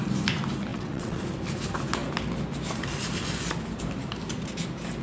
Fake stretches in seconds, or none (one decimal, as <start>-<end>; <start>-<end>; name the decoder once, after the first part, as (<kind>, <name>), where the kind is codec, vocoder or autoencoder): 0.7-1.2 (vocoder, WaveNeXt)